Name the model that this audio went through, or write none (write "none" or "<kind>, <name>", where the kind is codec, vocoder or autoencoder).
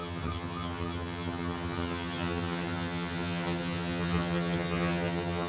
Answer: vocoder, HiFi-GAN